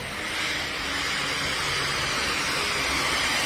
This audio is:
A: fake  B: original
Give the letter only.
B